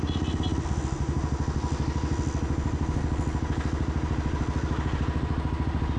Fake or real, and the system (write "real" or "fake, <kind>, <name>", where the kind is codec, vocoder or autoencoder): real